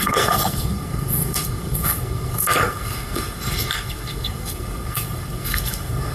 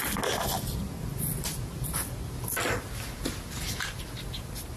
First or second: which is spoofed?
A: first